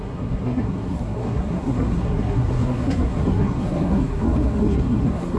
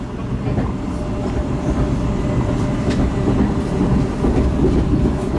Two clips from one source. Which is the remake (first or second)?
first